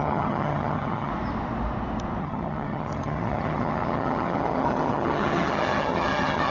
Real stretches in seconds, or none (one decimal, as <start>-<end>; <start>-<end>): 1.1-2.2